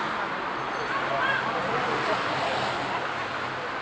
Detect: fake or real fake